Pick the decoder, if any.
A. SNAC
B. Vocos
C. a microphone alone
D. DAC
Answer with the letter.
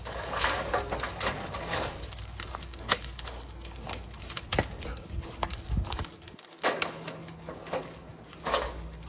D